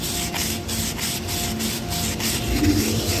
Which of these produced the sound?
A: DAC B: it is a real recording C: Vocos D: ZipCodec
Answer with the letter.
B